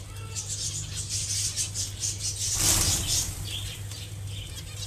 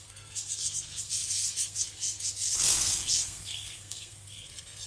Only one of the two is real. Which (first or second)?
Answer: first